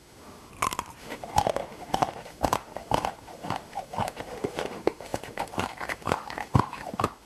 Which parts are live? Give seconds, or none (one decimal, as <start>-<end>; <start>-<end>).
0.5-1.0